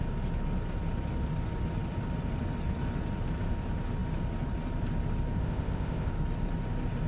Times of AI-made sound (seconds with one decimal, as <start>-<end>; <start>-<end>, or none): 5.4-6.1